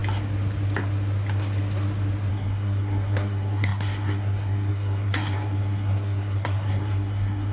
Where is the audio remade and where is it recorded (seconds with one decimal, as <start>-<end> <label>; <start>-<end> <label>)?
0.0-2.3 recorded; 2.3-7.5 remade